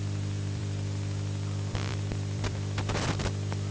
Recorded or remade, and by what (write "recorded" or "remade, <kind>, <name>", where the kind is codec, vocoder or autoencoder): remade, vocoder, BigVGAN v2